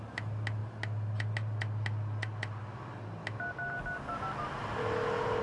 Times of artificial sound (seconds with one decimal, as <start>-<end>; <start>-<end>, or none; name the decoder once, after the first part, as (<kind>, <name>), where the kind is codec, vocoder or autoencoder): none